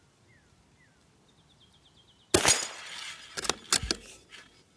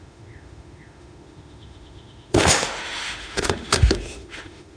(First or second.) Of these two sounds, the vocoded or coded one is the second